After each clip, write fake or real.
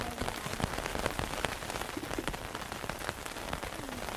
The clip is real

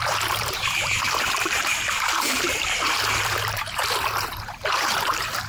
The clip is fake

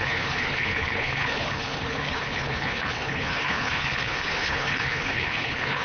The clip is fake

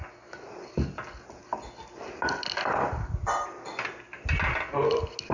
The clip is real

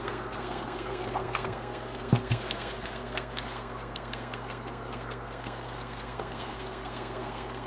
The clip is fake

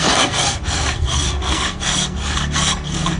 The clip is fake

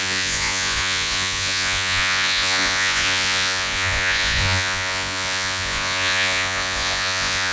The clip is fake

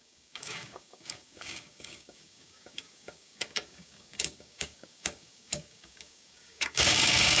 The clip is fake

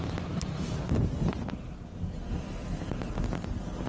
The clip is real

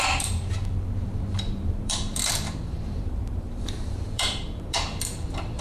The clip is fake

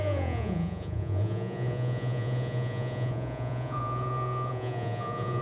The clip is fake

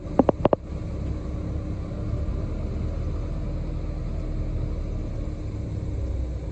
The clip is real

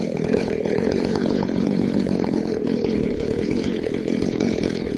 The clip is fake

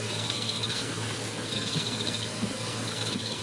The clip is fake